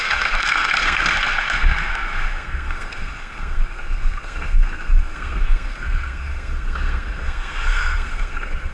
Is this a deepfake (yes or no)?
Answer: yes